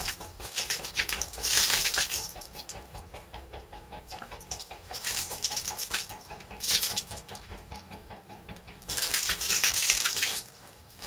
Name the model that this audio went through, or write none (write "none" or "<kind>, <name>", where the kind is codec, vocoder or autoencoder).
codec, DAC